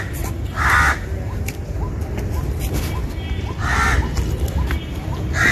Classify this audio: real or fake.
real